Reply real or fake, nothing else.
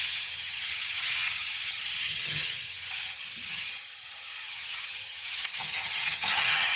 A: fake